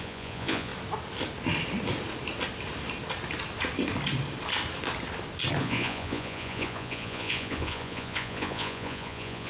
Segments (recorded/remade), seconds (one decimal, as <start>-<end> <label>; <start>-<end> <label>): 0.0-0.7 remade; 0.7-5.6 recorded; 5.6-9.5 remade